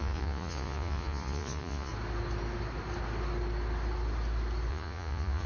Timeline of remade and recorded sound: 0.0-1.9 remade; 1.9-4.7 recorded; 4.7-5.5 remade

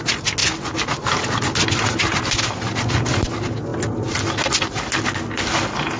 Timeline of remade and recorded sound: 0.0-6.0 recorded

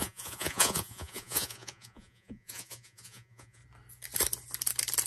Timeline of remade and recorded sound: 0.0-3.6 remade; 3.6-5.1 recorded

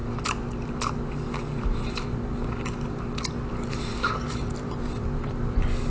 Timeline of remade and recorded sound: 0.0-5.9 recorded

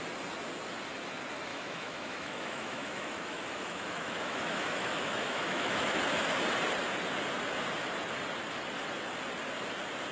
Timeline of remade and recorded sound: 0.0-1.5 recorded; 1.5-6.0 remade; 6.0-10.1 recorded

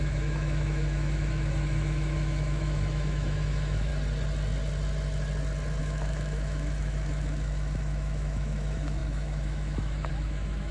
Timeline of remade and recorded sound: 0.0-3.9 remade; 3.9-5.8 recorded; 5.8-10.7 remade

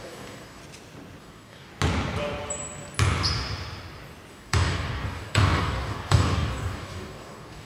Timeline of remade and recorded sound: 0.0-0.6 remade; 0.6-1.2 recorded; 1.2-1.7 remade; 1.7-4.3 recorded; 4.3-7.7 remade

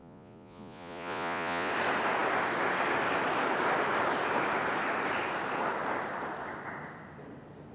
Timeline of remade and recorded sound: 0.0-1.7 remade; 1.7-7.7 recorded